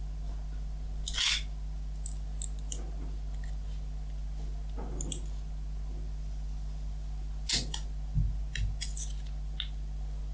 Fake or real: real